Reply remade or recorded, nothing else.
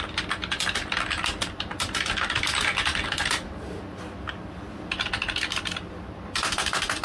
recorded